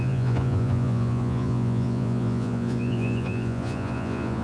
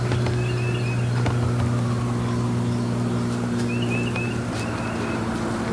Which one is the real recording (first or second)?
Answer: second